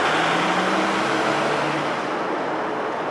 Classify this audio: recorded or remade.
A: recorded